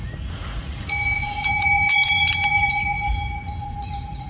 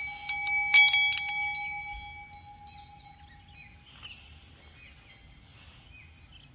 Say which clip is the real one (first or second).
second